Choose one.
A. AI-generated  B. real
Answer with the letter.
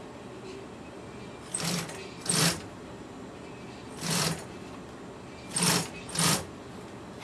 B